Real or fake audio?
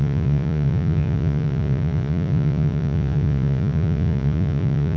fake